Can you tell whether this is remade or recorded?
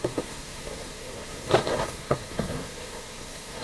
remade